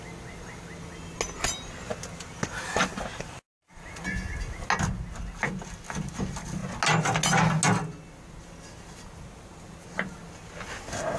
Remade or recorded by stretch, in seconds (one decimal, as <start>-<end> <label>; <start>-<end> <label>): 0.0-3.1 recorded; 3.1-3.8 remade; 3.8-11.2 recorded